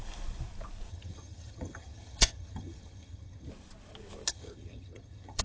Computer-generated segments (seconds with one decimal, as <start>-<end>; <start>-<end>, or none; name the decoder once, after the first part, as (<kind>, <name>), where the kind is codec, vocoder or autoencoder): 0.9-3.5 (vocoder, HiFi-GAN); 4.3-5.4